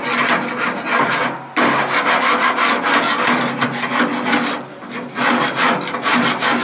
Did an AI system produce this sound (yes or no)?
no